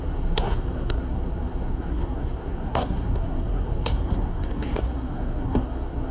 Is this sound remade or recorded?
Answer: remade